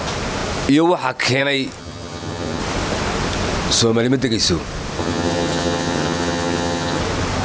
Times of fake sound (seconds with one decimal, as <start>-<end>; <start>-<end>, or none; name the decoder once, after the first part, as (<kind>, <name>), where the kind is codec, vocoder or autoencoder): 1.8-2.6 (vocoder, HiFi-GAN); 5.0-7.0